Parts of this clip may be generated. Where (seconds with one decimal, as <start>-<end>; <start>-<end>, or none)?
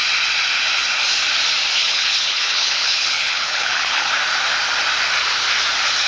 1.8-4.1